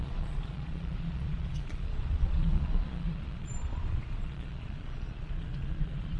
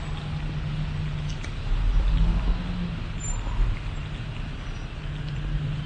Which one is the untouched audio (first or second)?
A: second